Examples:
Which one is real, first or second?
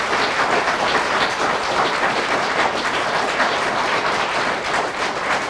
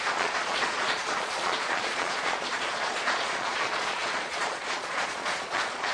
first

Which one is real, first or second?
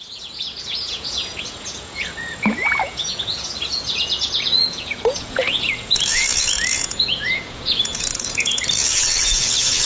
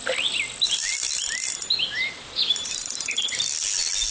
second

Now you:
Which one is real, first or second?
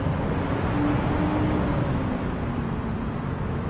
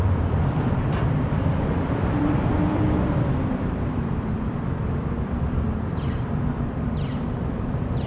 first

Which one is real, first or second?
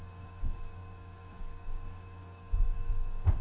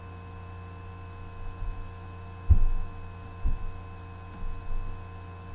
second